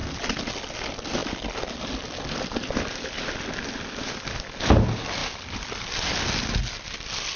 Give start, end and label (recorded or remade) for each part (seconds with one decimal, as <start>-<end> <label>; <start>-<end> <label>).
0.0-7.4 recorded